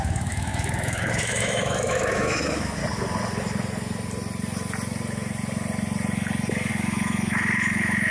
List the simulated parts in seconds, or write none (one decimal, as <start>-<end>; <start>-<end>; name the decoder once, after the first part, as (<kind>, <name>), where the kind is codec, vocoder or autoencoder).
0.0-2.8 (autoencoder, DAC-VAE); 6.7-8.1